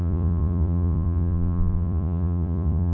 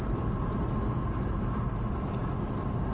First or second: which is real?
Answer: second